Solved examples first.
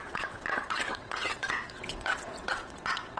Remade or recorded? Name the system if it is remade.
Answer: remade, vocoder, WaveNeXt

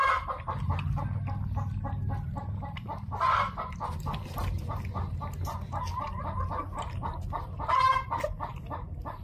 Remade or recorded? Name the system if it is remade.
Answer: recorded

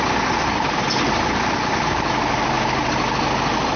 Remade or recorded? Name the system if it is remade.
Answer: recorded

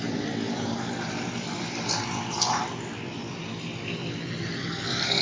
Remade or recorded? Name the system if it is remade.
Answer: recorded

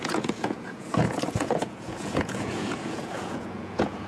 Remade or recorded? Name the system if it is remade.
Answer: remade, vocoder, Vocos